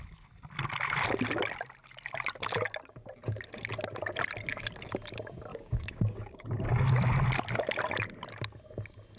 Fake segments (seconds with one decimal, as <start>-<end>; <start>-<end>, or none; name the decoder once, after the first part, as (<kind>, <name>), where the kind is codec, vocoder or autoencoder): 5.5-6.6 (codec, DAC)